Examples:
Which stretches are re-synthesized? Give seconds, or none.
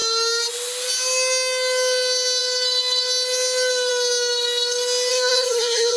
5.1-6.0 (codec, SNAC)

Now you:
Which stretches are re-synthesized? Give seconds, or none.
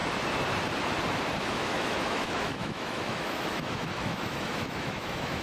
1.4-5.4 (autoencoder, DAC-VAE)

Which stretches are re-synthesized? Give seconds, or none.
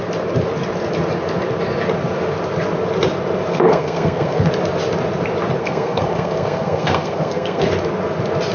3.5-4.5 (codec, SNAC); 5.6-7.7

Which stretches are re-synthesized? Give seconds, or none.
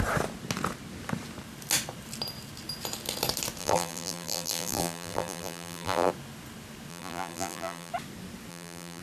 3.6-6.1 (vocoder, BigVGAN v2); 6.9-7.9; 8.5-9.0